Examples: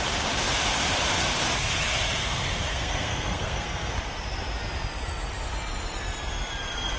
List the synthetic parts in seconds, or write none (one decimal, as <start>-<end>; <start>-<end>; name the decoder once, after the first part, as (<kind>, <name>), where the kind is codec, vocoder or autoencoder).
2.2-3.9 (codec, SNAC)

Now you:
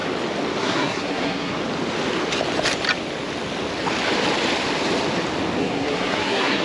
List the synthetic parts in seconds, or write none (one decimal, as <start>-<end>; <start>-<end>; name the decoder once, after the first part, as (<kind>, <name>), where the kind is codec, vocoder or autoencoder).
0.6-1.6 (codec, SNAC); 5.6-6.6

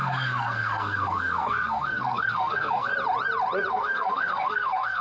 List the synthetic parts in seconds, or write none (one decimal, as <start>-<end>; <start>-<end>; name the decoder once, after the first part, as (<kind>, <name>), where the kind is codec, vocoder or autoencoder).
0.0-2.9 (codec, SNAC); 3.7-5.0

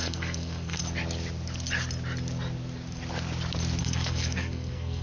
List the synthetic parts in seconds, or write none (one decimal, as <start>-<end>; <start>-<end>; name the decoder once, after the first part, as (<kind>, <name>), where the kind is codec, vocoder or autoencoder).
0.0-0.8 (codec, SNAC); 3.8-5.0